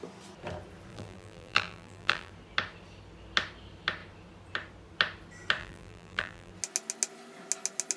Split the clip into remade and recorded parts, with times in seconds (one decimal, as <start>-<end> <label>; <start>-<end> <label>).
0.0-0.9 recorded; 0.9-2.3 remade; 2.3-5.6 recorded; 5.6-6.5 remade; 6.5-8.0 recorded